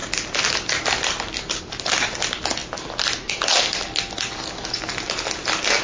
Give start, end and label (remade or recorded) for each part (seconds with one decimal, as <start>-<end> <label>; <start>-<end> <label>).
0.0-5.8 recorded

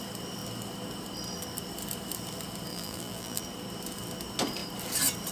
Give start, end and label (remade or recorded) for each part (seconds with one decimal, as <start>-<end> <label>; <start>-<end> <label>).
0.0-2.7 recorded; 2.7-3.4 remade; 3.4-5.3 recorded

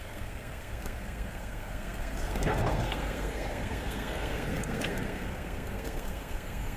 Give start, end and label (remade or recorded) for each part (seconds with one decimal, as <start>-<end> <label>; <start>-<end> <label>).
0.0-6.8 remade

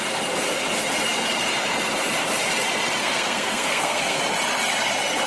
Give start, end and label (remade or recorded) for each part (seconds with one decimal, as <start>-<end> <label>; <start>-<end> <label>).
0.0-3.0 recorded; 3.0-4.2 remade; 4.2-5.3 recorded